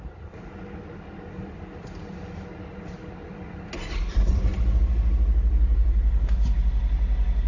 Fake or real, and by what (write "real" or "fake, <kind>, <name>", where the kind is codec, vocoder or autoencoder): real